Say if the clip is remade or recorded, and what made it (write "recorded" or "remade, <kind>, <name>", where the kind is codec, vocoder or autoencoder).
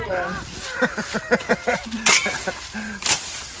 remade, vocoder, BigVGAN v2